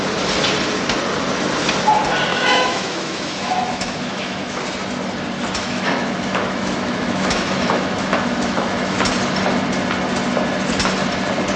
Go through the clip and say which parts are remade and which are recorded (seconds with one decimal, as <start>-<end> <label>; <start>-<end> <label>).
0.0-2.3 recorded; 2.3-4.6 remade; 4.6-5.6 recorded; 5.6-9.0 remade; 9.0-11.6 recorded